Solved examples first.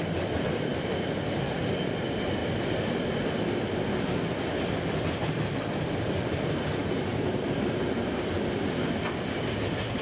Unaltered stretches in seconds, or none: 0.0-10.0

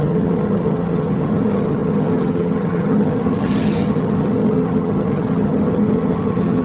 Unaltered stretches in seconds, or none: none

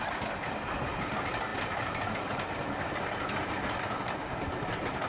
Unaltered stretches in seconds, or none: 0.0-5.1